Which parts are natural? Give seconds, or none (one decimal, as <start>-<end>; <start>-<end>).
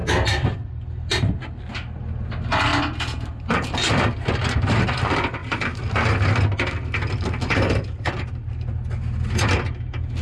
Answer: 0.0-10.2